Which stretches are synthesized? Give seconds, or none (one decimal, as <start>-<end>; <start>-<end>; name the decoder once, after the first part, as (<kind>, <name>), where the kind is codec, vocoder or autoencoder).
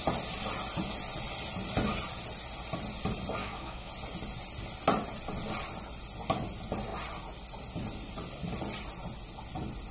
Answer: 3.4-3.9 (autoencoder, DAC-VAE)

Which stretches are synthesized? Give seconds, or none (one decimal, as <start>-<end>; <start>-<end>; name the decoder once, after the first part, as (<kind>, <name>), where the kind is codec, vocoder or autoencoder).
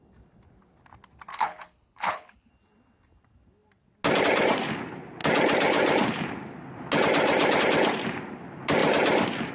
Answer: 1.3-2.5 (codec, HILCodec)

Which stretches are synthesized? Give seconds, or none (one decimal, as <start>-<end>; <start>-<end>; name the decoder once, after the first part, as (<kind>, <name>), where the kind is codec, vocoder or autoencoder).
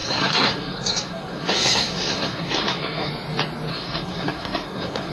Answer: 0.0-3.1 (codec, SNAC); 3.7-5.1